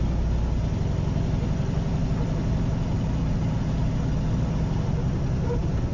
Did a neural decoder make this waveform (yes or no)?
no